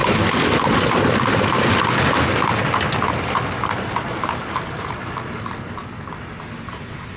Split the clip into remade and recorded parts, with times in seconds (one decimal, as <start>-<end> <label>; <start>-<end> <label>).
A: 0.0-7.2 recorded